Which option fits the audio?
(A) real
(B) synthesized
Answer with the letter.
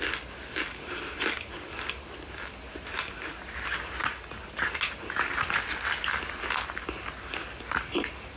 A